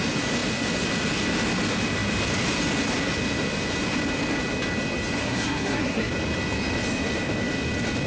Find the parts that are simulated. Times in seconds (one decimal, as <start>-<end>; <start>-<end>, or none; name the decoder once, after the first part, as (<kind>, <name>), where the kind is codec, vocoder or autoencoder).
5.2-6.1 (codec, SNAC)